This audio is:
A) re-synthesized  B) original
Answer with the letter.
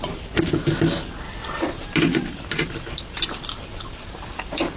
A